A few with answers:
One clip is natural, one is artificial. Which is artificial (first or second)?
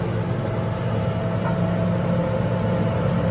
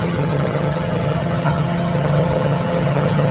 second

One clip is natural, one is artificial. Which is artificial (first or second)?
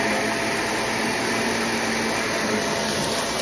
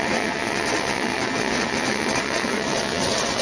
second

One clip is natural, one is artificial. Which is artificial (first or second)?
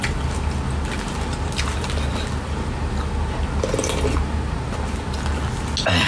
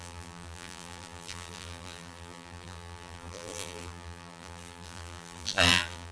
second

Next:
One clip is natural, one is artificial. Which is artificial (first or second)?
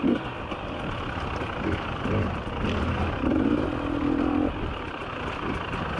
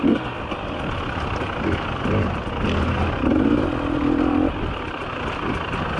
first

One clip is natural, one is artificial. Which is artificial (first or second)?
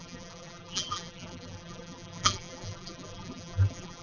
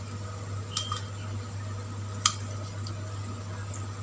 first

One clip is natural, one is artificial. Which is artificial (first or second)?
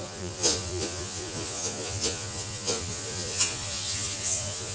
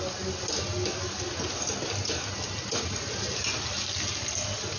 first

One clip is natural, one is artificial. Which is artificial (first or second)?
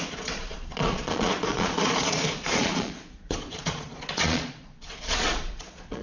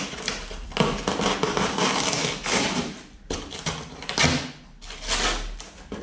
first